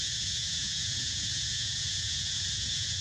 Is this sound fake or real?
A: fake